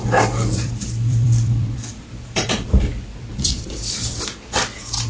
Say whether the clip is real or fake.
fake